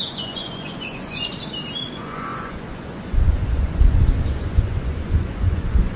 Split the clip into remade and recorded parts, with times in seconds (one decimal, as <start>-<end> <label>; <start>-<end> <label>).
0.0-1.3 remade; 1.3-1.9 recorded; 1.9-6.0 remade